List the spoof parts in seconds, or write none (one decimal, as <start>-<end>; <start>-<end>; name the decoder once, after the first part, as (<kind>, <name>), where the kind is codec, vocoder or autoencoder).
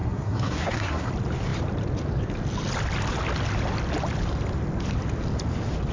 0.0-1.1 (codec, SNAC)